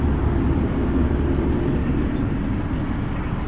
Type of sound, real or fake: real